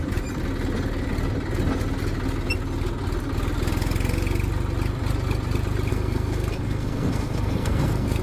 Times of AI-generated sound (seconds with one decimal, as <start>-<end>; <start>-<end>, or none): 5.9-8.2